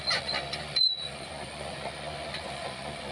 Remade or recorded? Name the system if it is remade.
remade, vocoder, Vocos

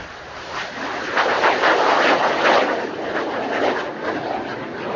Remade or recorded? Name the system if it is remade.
recorded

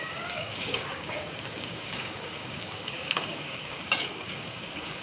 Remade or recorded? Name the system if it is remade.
remade, codec, DAC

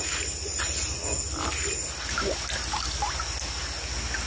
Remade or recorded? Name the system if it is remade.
recorded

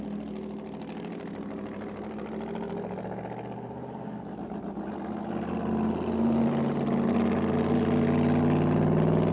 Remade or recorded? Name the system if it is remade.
recorded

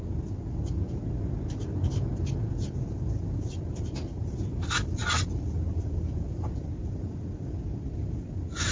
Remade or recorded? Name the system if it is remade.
recorded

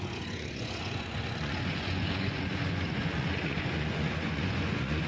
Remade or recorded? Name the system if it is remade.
remade, vocoder, Vocos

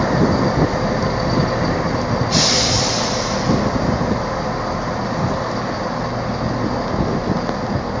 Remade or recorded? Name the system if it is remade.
recorded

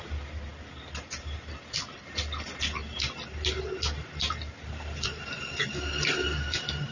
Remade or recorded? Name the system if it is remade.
recorded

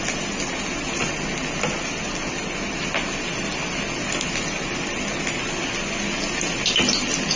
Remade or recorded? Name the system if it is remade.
recorded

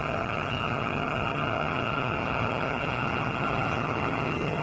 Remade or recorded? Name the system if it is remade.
remade, vocoder, HiFi-GAN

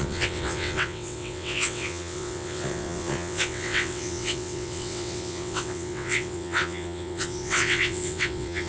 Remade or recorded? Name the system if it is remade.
remade, vocoder, WaveNeXt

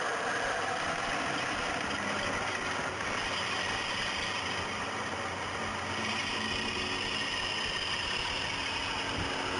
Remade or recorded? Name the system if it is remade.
recorded